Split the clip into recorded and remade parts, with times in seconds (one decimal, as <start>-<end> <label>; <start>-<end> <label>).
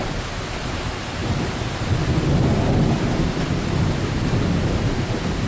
0.0-5.5 recorded